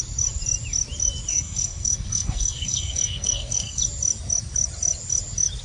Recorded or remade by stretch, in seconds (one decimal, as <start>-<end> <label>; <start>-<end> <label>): 0.0-1.3 recorded; 1.3-3.8 remade; 3.8-5.6 recorded